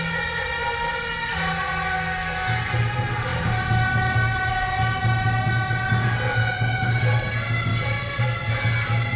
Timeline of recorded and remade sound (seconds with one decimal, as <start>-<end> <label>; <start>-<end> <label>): 0.0-7.7 recorded; 7.7-8.5 remade; 8.5-9.2 recorded

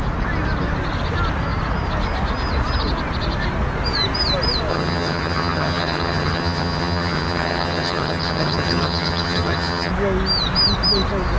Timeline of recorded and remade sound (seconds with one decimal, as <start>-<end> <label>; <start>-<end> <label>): 0.0-4.7 recorded; 4.7-9.9 remade; 9.9-11.4 recorded